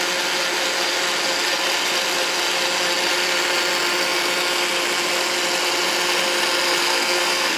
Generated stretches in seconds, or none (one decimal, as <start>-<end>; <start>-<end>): 6.8-7.6